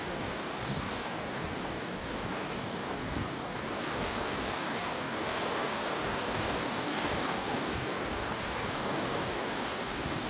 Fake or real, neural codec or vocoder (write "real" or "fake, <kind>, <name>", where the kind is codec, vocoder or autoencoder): fake, codec, DAC